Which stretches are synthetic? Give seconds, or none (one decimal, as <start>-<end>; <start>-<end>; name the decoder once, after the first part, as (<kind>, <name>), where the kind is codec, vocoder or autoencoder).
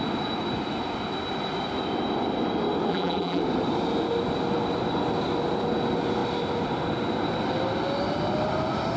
2.9-3.4 (vocoder, BigVGAN v2)